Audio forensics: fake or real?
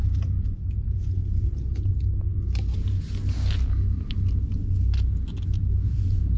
real